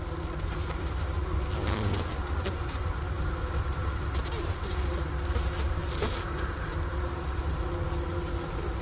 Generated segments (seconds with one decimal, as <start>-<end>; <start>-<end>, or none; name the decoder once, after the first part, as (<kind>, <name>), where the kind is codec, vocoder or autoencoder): none